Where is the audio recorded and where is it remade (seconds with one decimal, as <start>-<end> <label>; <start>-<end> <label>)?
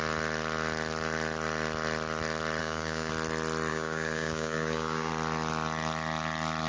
0.0-2.6 recorded; 2.6-3.1 remade; 3.1-3.7 recorded; 3.7-5.1 remade; 5.1-6.7 recorded